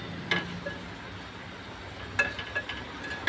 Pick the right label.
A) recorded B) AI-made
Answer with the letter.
A